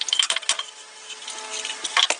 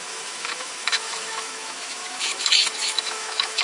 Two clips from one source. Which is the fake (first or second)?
second